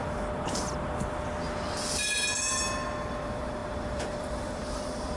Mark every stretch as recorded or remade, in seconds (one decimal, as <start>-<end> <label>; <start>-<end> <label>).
0.0-3.1 recorded; 3.1-5.2 remade